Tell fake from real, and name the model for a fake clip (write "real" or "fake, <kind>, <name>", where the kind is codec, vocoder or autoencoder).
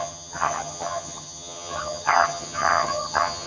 fake, vocoder, HiFi-GAN